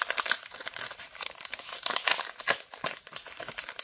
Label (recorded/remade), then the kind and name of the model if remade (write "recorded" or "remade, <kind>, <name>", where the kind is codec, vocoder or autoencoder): recorded